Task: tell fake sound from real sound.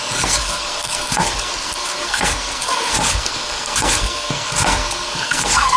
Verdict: fake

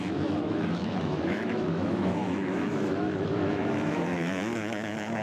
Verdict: fake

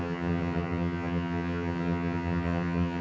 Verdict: fake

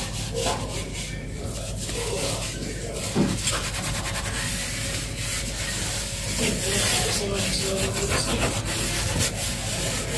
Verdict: real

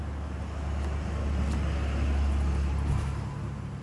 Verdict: real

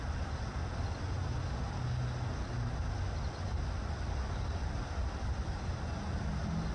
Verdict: real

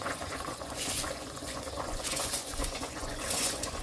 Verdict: fake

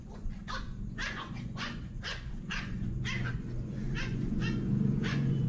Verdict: fake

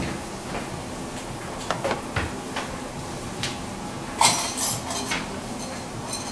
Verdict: real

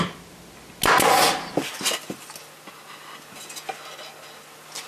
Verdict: real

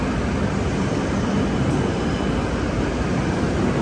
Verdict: real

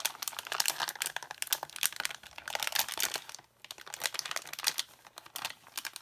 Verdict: real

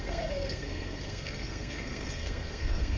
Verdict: fake